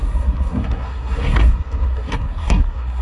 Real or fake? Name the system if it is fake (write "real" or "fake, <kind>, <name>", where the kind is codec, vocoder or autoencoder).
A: fake, codec, SNAC